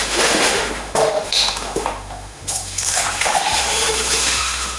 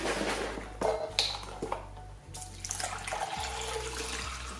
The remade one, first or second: first